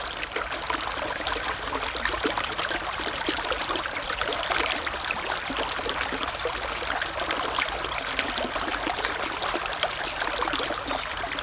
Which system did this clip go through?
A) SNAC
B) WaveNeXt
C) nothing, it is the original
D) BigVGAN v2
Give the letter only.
D